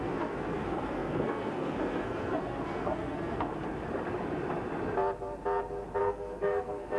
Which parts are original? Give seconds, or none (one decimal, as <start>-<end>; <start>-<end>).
3.5-6.0